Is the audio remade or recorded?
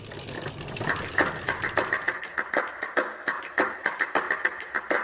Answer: recorded